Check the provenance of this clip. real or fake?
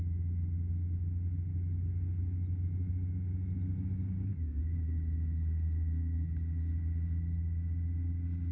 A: real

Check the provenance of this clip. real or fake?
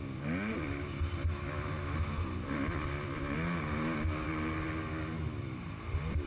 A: real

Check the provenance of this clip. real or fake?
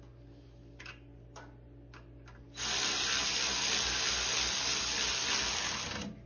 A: real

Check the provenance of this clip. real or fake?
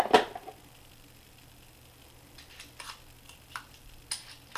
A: real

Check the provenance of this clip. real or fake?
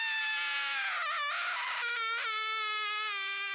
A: real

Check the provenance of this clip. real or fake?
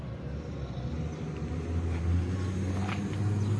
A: real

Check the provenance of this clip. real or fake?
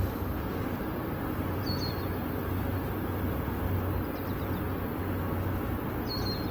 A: real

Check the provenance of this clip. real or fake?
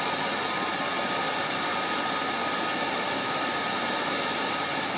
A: real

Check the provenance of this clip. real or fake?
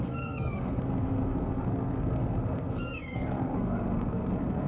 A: fake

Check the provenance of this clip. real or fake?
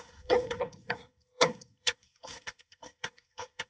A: fake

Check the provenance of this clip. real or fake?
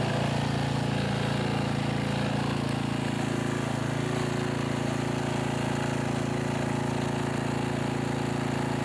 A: real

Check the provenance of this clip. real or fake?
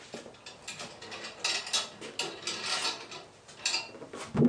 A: real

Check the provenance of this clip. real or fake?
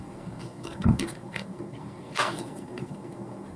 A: fake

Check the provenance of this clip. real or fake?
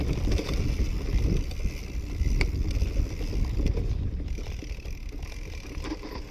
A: real